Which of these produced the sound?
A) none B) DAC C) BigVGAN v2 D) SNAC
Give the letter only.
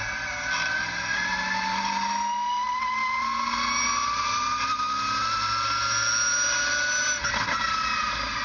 A